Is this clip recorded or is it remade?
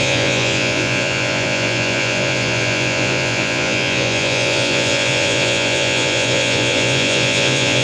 remade